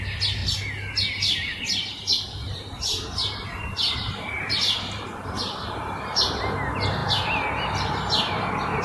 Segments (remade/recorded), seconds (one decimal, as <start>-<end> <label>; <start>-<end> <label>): 0.0-2.4 recorded; 2.4-6.4 remade; 6.4-8.8 recorded